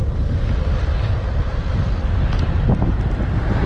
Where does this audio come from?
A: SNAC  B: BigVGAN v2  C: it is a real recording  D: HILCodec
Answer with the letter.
C